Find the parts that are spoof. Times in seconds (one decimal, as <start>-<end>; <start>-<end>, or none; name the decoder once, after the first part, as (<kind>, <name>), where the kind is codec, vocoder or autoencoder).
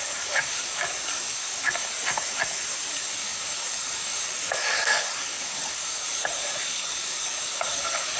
0.0-1.8 (codec, DAC); 2.9-8.2